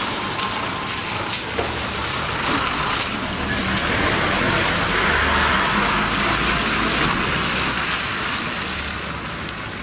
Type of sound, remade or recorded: recorded